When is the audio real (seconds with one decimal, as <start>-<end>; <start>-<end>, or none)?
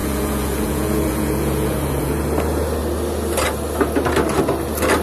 2.2-5.0